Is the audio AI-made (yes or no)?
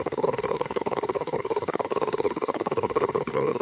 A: yes